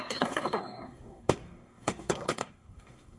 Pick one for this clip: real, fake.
fake